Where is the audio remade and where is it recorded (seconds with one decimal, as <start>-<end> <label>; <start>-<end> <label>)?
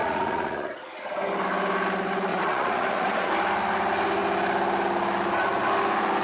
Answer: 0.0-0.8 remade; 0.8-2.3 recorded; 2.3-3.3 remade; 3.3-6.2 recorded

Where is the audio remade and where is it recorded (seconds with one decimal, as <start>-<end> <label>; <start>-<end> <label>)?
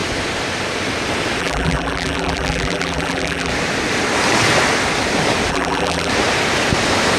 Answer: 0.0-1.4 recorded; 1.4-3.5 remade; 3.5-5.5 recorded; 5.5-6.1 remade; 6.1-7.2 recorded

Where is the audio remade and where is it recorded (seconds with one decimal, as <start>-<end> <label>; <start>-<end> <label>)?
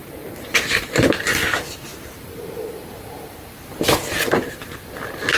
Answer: 0.0-0.6 remade; 0.6-1.9 recorded; 1.9-3.5 remade; 3.5-5.4 recorded